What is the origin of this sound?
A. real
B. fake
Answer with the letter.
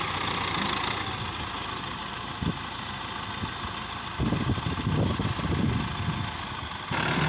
A